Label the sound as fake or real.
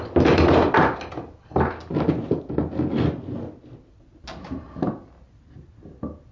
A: real